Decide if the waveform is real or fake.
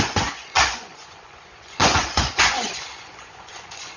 fake